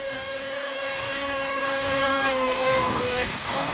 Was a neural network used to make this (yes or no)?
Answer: yes